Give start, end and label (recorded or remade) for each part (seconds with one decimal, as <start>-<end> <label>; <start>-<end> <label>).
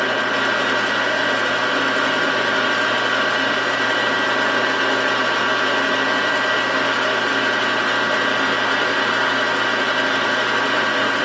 0.0-11.2 recorded